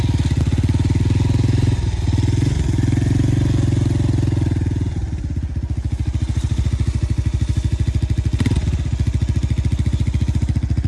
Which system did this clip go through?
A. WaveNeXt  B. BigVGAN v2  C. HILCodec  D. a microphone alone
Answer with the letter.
D